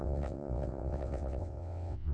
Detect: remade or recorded remade